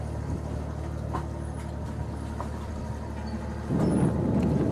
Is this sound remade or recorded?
recorded